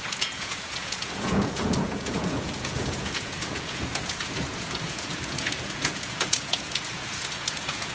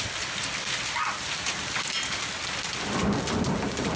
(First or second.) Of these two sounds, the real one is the second